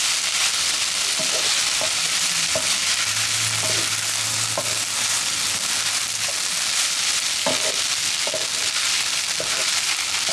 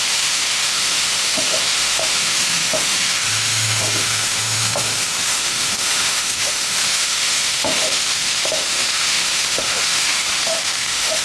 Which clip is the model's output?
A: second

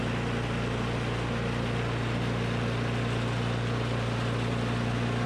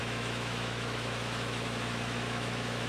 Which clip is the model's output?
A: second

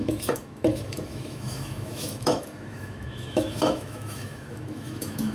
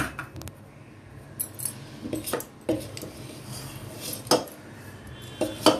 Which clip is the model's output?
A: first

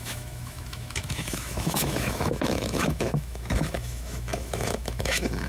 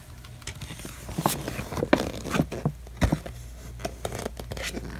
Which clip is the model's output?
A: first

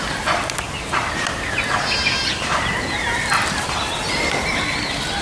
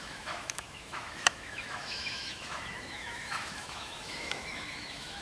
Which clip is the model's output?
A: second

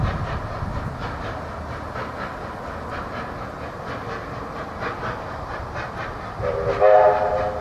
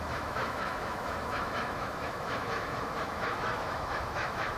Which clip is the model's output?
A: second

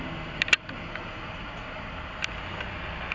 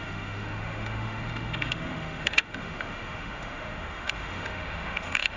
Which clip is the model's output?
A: second